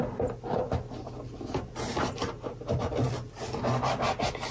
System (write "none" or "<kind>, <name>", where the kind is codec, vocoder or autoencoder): none